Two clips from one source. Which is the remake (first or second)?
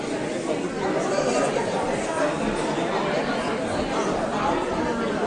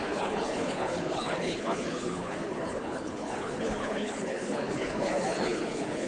second